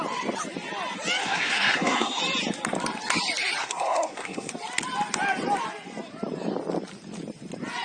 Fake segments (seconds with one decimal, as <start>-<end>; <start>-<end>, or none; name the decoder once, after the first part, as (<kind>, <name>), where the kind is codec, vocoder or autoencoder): 1.2-2.2 (codec, SNAC); 3.6-4.5

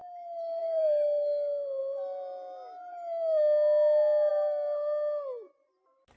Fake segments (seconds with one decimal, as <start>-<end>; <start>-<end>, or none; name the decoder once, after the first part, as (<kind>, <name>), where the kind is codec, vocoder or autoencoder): none

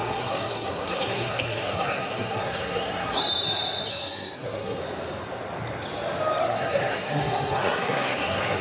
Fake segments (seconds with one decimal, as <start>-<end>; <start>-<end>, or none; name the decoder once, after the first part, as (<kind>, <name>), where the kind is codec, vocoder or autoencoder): 0.0-3.2 (codec, SNAC); 3.9-4.8; 6.4-8.6

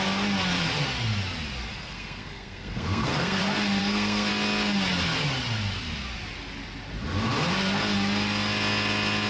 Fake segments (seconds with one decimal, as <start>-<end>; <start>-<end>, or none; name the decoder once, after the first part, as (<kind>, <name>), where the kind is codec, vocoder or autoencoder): 1.7-3.4 (codec, SNAC); 3.8-4.3